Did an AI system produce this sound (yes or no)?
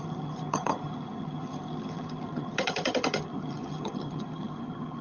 yes